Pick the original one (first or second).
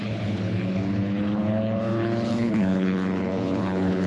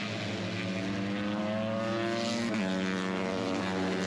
second